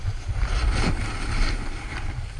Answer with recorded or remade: recorded